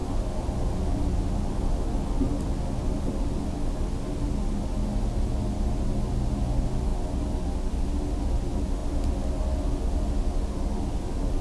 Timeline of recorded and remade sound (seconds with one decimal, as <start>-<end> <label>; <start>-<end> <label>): 0.0-11.4 recorded